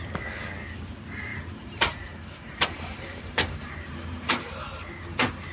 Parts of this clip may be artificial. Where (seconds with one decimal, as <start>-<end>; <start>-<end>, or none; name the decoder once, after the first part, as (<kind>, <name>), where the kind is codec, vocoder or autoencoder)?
1.3-4.5 (vocoder, BigVGAN v2)